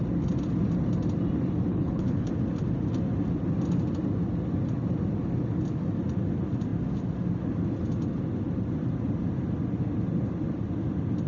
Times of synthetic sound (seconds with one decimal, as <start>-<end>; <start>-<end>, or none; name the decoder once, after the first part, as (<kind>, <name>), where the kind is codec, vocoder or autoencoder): 1.7-2.3 (codec, HILCodec)